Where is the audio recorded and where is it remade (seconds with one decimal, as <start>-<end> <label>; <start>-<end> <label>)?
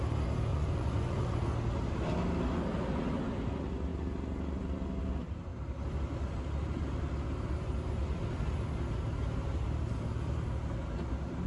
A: 0.0-0.5 recorded; 0.5-1.5 remade; 1.5-11.5 recorded